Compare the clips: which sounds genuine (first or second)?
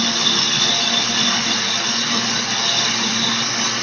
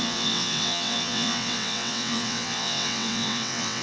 first